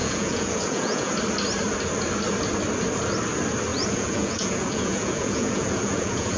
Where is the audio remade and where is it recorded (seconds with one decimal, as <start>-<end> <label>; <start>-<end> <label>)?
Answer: 0.0-1.1 remade; 1.1-3.7 recorded; 3.7-6.4 remade